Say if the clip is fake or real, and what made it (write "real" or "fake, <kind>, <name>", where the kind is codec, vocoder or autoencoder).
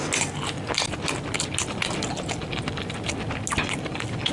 real